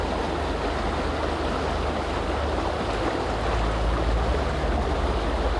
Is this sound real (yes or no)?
yes